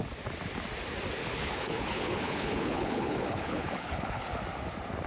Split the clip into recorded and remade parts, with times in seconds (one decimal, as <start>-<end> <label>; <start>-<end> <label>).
0.0-1.2 recorded; 1.2-4.3 remade; 4.3-5.1 recorded